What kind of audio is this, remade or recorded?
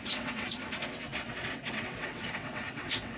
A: remade